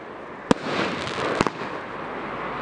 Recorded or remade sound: recorded